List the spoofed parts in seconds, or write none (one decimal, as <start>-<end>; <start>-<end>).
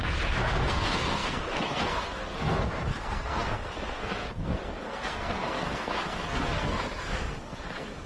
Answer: 0.0-8.1